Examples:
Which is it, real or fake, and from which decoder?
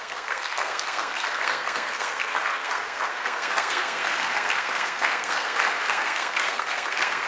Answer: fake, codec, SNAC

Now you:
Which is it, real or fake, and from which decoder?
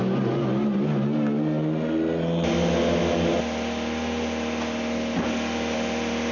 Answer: real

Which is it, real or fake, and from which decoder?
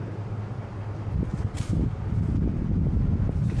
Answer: real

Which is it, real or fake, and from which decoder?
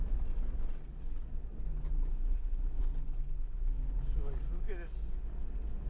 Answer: real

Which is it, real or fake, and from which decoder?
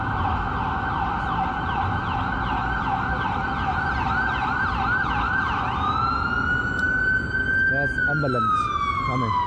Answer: real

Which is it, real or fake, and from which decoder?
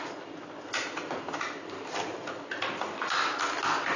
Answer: real